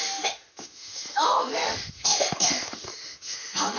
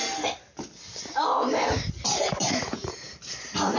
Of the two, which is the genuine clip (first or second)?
second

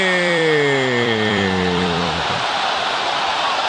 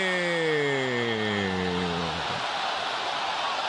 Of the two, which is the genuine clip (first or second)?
second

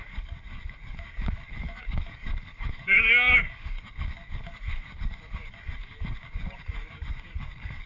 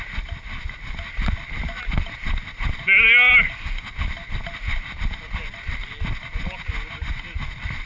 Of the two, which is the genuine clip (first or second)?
second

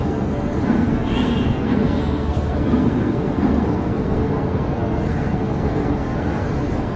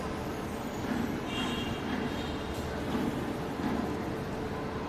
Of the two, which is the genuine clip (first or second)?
second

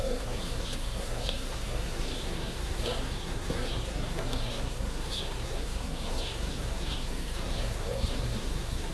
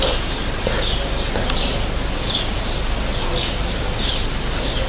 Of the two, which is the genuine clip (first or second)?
second